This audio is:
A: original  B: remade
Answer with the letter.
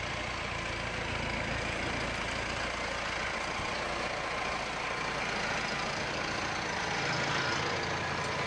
A